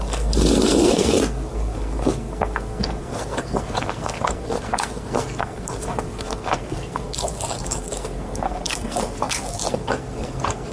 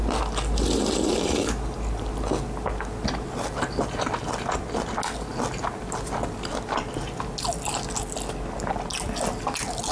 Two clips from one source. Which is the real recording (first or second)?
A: second